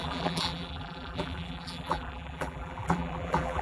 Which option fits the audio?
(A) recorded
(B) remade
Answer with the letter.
B